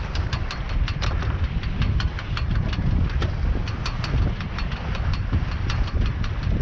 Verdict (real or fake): real